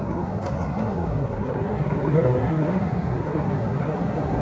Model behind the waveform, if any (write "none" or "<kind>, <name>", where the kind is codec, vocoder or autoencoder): codec, SNAC